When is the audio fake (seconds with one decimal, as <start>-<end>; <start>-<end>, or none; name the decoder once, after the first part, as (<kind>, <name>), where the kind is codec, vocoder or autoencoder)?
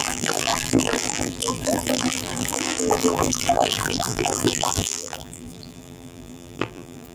0.0-7.1 (vocoder, BigVGAN v2)